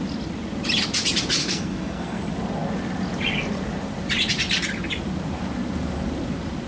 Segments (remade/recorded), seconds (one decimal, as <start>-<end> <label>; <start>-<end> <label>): 0.0-1.4 recorded; 1.4-2.2 remade; 2.2-6.7 recorded